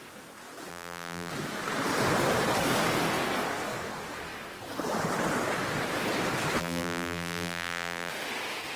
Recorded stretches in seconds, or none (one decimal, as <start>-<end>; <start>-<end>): 0.0-0.7; 1.3-6.6; 8.1-8.8